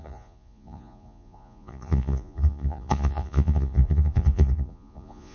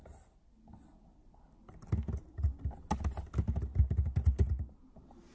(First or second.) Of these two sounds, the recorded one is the second